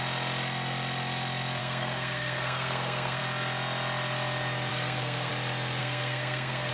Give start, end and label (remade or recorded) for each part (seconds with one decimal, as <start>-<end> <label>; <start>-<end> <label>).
0.0-1.6 recorded; 1.6-3.2 remade; 3.2-4.7 recorded; 4.7-5.3 remade; 5.3-5.8 recorded; 5.8-6.7 remade